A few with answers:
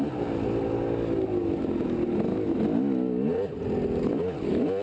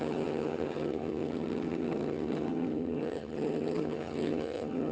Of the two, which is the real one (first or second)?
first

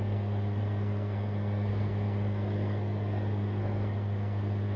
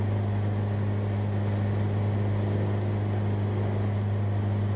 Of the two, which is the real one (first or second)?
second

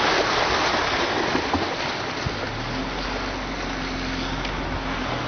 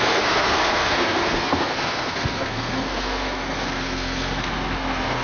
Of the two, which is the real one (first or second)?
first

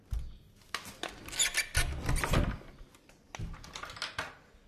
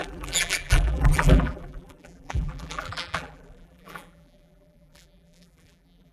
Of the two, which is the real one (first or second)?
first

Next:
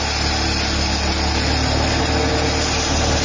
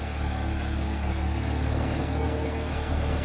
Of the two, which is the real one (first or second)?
first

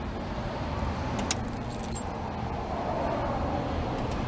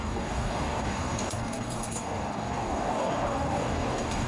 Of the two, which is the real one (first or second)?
first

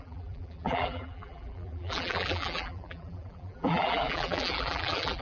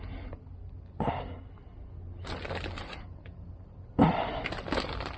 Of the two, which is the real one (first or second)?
second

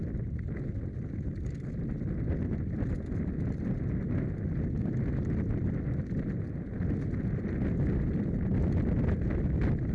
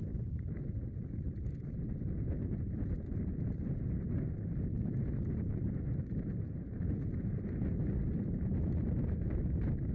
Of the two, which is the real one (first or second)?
first